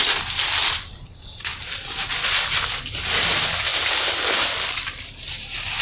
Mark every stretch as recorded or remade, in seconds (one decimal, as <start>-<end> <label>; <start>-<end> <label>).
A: 0.0-3.7 recorded; 3.7-4.6 remade; 4.6-5.8 recorded